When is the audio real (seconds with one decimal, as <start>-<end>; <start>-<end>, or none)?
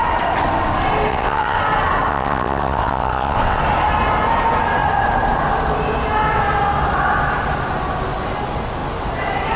0.0-1.1; 1.6-2.1; 3.6-9.6